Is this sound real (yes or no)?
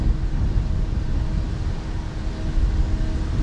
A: yes